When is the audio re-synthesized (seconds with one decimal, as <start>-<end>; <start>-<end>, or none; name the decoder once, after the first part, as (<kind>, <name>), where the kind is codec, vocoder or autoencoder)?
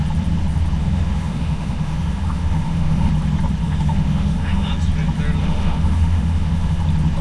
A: 0.8-3.1 (autoencoder, DAC-VAE); 3.6-4.7; 5.4-6.8